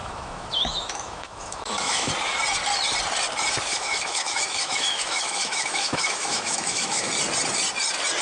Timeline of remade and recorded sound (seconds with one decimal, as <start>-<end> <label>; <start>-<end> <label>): 0.0-2.1 remade; 2.1-3.7 recorded; 3.7-7.1 remade; 7.1-8.2 recorded